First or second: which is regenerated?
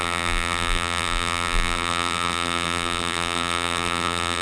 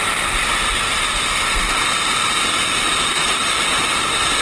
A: first